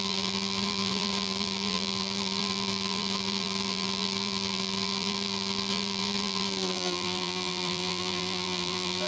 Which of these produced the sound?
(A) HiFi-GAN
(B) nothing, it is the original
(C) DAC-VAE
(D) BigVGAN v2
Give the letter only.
D